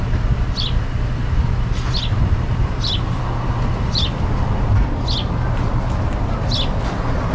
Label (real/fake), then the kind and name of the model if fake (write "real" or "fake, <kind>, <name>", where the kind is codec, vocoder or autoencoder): real